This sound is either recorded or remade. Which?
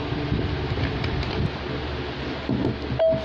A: recorded